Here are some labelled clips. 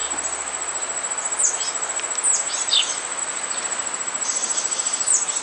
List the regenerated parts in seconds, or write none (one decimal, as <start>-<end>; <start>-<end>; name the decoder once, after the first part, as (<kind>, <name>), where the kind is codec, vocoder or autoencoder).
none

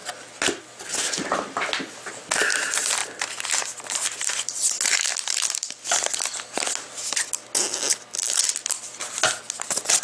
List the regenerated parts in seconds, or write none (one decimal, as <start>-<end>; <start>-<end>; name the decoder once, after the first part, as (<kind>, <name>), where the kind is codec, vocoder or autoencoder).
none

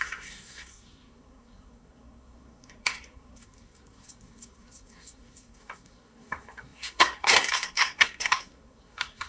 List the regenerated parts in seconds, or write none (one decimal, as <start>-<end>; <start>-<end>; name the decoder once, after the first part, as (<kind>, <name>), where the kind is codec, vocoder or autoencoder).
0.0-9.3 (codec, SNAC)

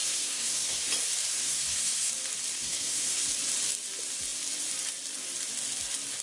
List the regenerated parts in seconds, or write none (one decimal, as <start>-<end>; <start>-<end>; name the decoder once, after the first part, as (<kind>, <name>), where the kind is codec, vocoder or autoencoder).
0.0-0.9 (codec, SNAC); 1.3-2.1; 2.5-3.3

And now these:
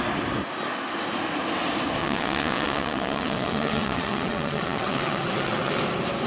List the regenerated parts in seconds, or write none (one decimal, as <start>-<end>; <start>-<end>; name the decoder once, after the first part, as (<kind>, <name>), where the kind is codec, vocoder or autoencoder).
2.0-5.8 (vocoder, WaveNeXt)